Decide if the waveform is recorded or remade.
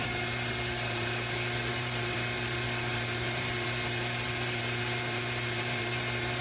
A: remade